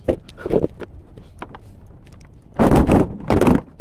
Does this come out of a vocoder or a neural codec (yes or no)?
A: yes